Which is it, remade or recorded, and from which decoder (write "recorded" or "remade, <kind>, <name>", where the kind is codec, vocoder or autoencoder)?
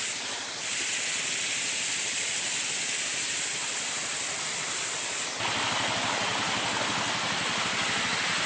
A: recorded